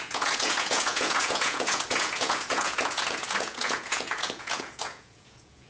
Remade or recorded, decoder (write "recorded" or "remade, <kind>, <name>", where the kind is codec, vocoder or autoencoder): remade, vocoder, Vocos